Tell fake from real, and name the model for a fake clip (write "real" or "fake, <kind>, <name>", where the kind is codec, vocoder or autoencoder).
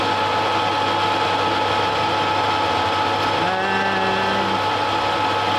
real